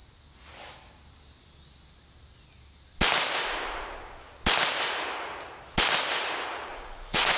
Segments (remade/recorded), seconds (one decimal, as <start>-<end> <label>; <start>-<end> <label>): 0.0-6.7 recorded; 6.7-7.4 remade